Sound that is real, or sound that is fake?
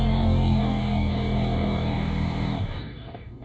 fake